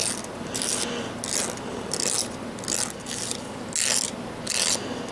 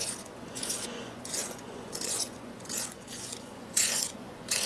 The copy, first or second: second